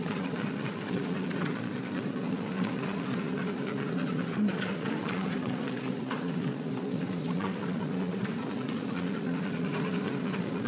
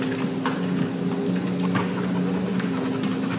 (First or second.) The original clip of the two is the second